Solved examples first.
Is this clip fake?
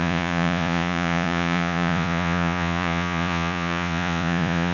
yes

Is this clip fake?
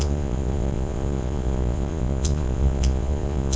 yes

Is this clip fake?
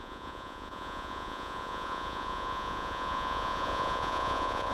yes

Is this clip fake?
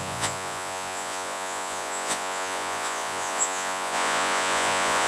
yes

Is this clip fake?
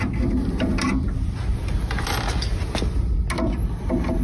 no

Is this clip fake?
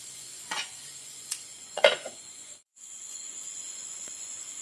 yes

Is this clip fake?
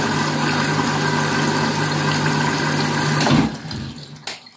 no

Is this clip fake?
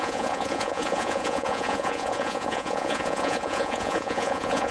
yes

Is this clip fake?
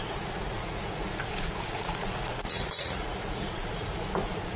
yes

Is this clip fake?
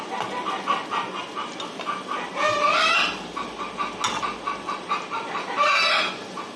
no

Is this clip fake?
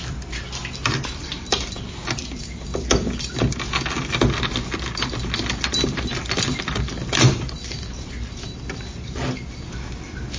no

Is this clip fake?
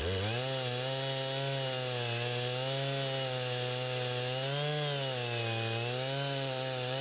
no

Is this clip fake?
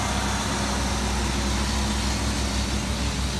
no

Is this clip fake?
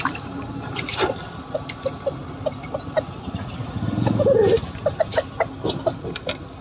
no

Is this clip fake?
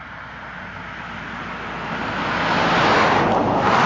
no